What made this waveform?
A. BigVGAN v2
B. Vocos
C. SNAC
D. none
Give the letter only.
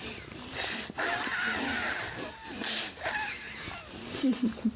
A